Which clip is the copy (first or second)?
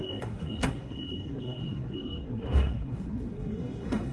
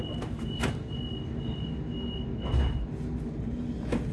first